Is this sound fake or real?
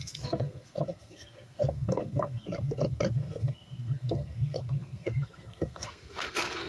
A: fake